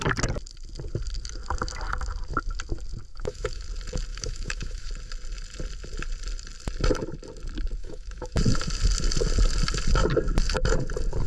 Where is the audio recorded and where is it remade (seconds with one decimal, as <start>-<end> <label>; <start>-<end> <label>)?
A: 0.0-3.1 recorded; 3.1-3.6 remade; 3.6-4.1 recorded; 4.1-4.9 remade; 4.9-7.8 recorded; 7.8-8.4 remade; 8.4-11.3 recorded